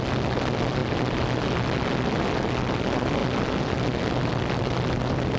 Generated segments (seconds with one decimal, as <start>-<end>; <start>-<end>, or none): none